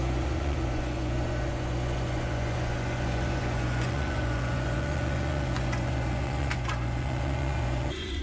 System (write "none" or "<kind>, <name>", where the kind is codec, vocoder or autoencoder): vocoder, Vocos